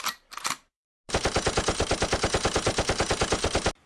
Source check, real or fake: real